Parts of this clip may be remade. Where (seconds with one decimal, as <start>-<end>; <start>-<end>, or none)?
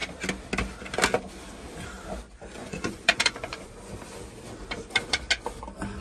2.6-3.7